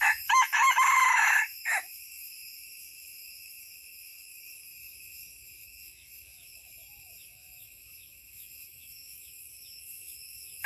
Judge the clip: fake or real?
fake